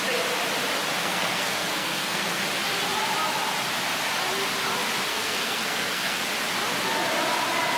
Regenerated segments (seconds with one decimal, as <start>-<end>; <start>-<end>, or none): 1.0-2.4; 5.1-6.2